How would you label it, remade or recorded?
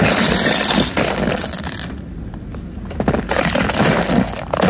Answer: recorded